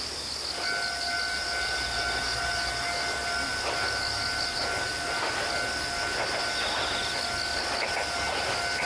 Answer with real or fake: real